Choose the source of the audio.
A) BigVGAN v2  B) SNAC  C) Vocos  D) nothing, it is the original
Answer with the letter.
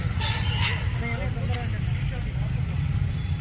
D